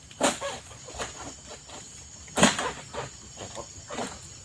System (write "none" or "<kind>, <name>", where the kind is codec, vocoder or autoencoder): none